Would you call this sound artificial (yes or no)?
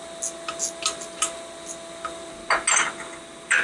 no